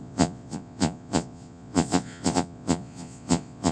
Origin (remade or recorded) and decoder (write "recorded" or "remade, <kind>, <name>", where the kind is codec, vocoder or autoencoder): remade, vocoder, Vocos